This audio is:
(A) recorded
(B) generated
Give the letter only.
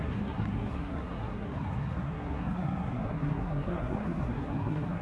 B